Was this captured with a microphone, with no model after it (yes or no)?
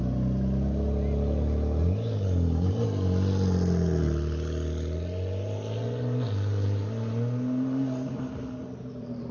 yes